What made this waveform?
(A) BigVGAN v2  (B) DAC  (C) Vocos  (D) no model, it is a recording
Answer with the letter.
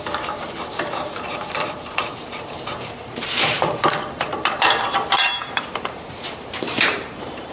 A